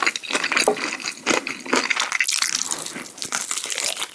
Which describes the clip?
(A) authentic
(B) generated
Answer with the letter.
A